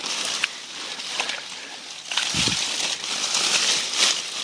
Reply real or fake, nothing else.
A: real